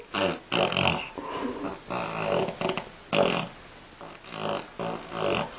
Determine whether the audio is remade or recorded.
recorded